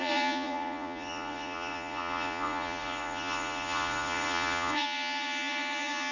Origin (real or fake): fake